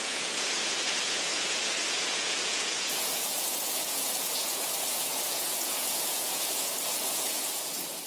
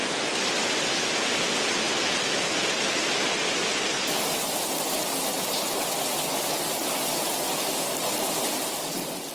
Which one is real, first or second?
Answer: second